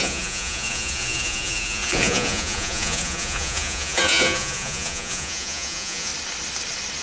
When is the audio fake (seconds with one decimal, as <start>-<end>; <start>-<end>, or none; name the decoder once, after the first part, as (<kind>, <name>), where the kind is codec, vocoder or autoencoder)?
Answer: 0.0-6.1 (vocoder, Vocos)